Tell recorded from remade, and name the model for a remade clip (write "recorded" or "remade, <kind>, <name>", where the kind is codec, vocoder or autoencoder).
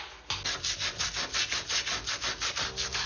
recorded